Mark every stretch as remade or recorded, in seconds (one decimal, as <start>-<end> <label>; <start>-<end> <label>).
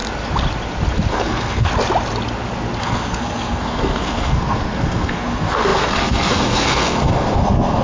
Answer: 0.0-1.1 recorded; 1.1-1.7 remade; 1.7-2.8 recorded; 2.8-7.8 remade